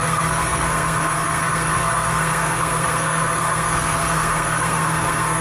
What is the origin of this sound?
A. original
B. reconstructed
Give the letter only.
B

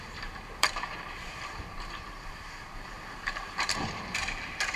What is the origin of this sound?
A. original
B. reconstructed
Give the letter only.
B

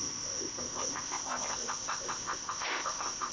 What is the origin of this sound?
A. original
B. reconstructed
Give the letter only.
B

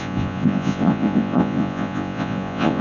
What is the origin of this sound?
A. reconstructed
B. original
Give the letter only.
A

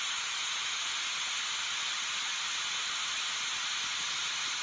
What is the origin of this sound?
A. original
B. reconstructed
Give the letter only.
A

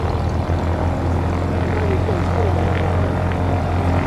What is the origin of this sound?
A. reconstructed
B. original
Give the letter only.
B